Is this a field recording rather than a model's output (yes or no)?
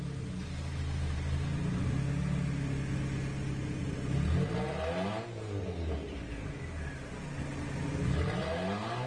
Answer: yes